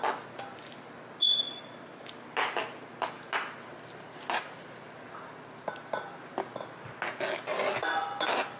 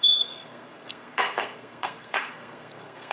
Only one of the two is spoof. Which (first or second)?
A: second